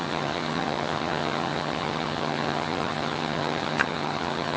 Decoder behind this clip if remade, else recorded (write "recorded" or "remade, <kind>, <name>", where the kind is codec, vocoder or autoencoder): remade, vocoder, HiFi-GAN